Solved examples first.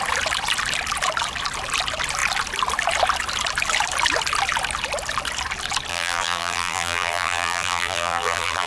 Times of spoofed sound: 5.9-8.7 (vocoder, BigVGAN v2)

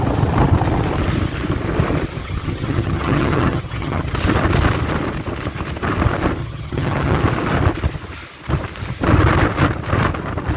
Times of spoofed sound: 2.2-4.1 (vocoder, HiFi-GAN); 6.4-7.2

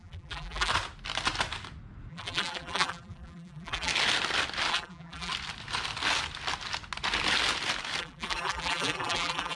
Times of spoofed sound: 0.0-0.7 (vocoder, BigVGAN v2); 2.1-3.9; 4.7-5.3; 8.0-9.6

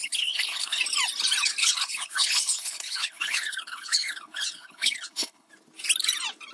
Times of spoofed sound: 0.0-0.8 (codec, HILCodec); 1.6-5.5